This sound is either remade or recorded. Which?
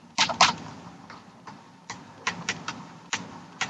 recorded